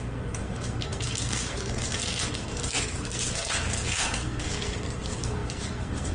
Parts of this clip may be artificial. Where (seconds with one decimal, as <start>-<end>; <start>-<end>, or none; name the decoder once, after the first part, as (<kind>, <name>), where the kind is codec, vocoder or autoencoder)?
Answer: 0.0-6.1 (codec, SNAC)